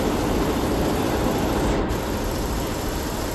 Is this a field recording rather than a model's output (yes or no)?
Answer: no